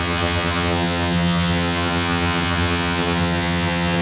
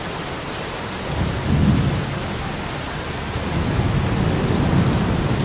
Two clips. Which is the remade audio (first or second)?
first